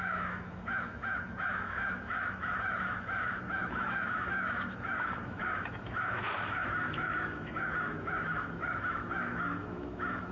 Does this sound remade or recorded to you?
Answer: remade